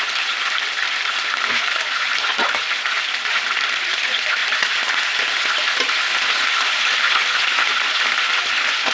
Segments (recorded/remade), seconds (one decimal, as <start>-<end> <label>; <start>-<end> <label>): 0.0-8.9 recorded